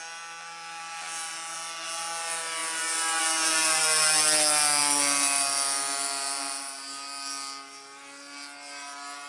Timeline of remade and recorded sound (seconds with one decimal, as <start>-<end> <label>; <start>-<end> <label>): 0.0-9.3 recorded